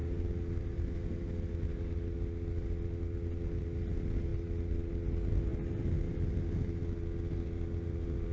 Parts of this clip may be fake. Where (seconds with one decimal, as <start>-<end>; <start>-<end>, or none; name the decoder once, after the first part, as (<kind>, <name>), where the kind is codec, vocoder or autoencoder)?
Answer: none